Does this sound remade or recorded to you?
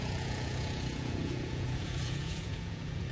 remade